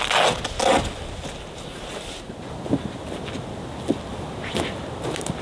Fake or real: real